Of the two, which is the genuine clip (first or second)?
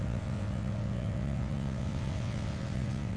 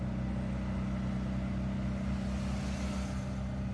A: second